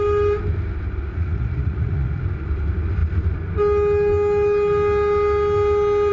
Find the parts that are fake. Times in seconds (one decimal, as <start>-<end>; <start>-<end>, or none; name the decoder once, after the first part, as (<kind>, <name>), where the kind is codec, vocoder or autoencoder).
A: 1.1-2.2 (vocoder, Vocos)